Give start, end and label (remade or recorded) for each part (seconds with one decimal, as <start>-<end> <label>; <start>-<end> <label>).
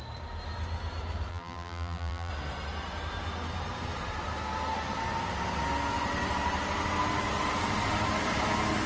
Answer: 0.0-1.3 recorded; 1.3-2.3 remade; 2.3-8.9 recorded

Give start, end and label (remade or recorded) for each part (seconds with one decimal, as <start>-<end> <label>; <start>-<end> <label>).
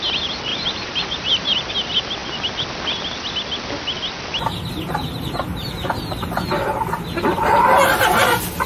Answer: 0.0-0.5 recorded; 0.5-1.7 remade; 1.7-5.5 recorded; 5.5-6.8 remade; 6.8-8.7 recorded